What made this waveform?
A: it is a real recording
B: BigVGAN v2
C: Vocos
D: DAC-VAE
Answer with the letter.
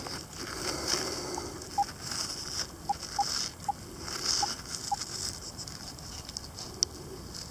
A